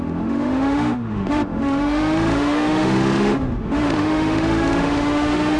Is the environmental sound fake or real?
fake